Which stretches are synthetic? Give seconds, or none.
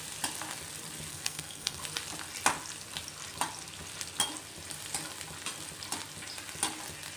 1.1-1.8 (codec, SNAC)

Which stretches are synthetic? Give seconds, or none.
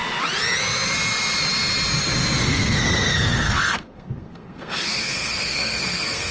2.4-6.3 (codec, SNAC)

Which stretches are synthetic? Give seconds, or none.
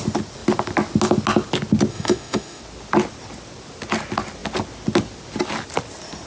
1.9-2.6 (autoencoder, DAC-VAE)